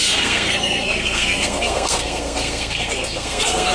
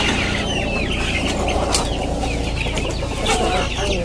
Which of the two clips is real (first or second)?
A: second